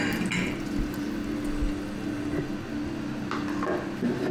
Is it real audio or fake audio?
real